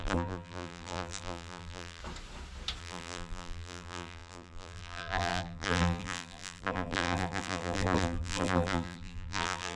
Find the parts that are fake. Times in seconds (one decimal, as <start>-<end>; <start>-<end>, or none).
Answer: 0.0-2.0; 2.8-9.8